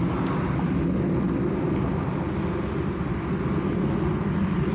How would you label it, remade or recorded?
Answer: recorded